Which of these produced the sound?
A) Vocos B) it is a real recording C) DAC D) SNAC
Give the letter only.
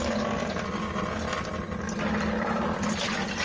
B